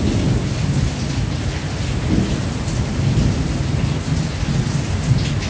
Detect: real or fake real